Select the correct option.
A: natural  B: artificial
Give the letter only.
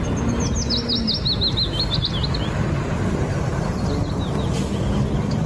A